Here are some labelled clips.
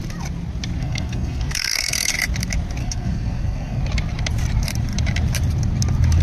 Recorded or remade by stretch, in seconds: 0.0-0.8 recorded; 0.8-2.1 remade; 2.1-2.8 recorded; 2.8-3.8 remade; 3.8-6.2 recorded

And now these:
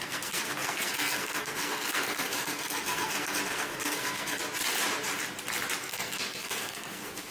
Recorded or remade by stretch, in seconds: 0.0-4.4 remade; 4.4-5.8 recorded; 5.8-7.3 remade

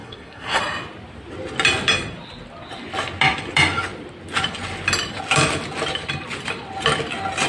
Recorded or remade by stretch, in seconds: 0.0-0.6 remade; 0.6-7.5 recorded

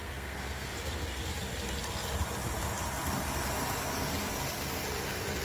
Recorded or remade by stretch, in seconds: 0.0-0.7 remade; 0.7-5.4 recorded

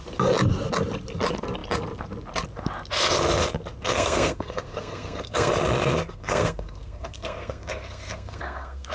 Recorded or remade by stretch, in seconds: 0.0-3.9 recorded; 3.9-5.5 remade; 5.5-6.1 recorded; 6.1-8.9 remade